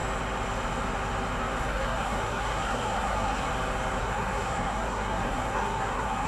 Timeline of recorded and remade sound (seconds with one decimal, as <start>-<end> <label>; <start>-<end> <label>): 0.0-1.6 recorded; 1.6-3.5 remade; 3.5-4.0 recorded; 4.0-6.3 remade